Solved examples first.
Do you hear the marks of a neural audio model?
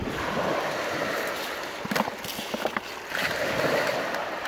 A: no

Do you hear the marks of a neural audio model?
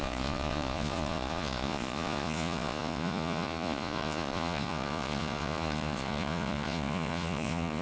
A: yes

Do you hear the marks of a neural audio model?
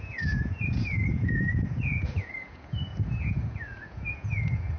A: yes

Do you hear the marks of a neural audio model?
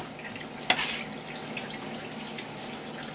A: no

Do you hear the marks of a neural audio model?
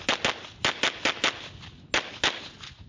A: no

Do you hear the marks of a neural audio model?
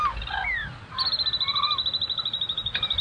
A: no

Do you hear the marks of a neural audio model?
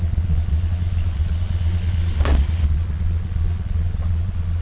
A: yes